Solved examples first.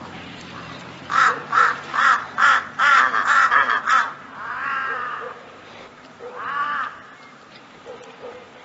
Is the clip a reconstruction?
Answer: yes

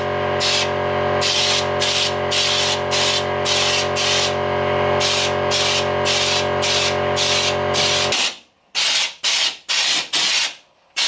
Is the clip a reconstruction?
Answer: no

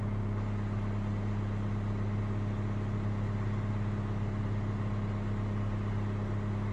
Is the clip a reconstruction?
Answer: no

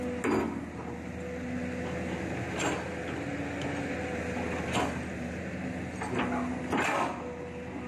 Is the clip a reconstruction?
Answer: no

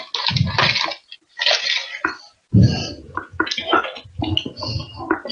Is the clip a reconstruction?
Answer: no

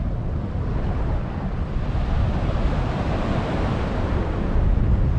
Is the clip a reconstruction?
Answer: no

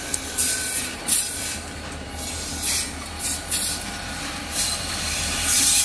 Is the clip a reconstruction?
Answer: yes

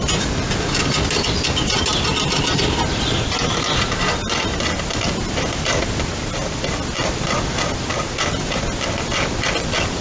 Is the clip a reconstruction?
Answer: no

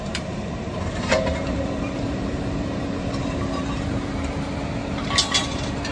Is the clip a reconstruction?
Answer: yes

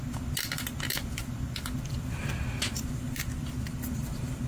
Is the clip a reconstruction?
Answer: no